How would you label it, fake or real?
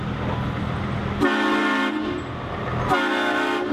real